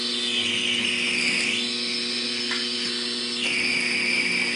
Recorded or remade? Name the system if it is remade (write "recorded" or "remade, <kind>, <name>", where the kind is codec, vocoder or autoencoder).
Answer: recorded